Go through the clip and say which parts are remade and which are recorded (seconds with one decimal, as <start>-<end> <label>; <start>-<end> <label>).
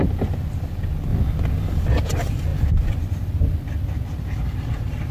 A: 0.0-5.1 recorded